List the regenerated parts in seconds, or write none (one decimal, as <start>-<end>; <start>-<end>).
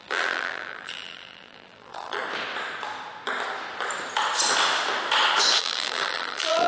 0.0-2.2; 5.6-6.7